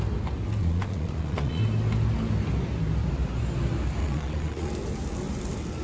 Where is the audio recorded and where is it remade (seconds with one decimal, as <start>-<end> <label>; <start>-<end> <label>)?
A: 0.0-0.6 recorded; 0.6-1.6 remade; 1.6-4.0 recorded; 4.0-4.7 remade; 4.7-5.8 recorded